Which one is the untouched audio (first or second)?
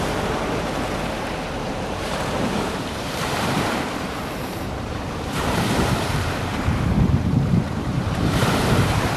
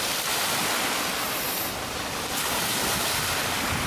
second